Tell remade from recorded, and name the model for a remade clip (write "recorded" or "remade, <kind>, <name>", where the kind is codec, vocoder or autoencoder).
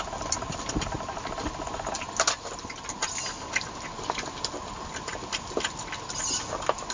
recorded